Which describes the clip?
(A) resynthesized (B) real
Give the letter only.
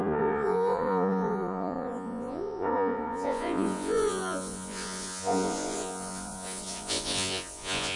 A